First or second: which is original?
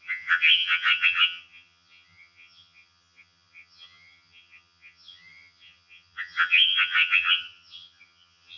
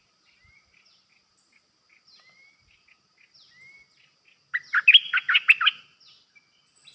second